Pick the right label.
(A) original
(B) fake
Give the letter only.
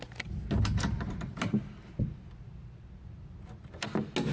A